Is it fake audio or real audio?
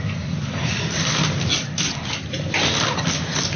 real